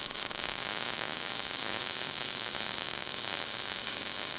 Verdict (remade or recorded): remade